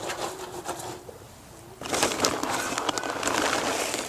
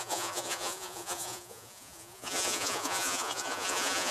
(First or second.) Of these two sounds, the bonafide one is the first